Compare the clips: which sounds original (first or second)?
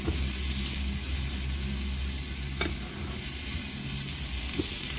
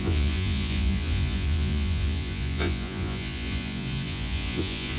first